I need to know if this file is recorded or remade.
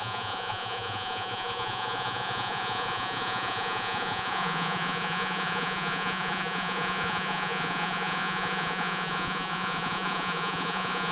remade